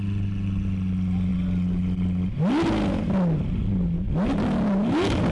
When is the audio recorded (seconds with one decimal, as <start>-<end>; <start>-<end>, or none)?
0.0-5.3